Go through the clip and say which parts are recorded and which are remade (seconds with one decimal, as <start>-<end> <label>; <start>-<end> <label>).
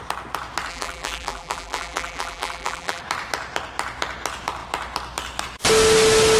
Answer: 0.0-0.7 recorded; 0.7-3.0 remade; 3.0-6.4 recorded